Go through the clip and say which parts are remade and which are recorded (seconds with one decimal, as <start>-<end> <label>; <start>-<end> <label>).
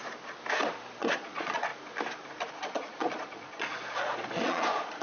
0.0-1.0 recorded; 1.0-1.7 remade; 1.7-2.5 recorded; 2.5-5.0 remade